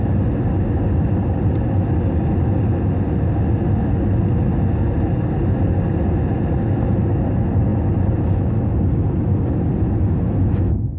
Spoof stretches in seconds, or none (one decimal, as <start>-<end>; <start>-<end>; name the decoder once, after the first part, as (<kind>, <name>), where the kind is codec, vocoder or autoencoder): none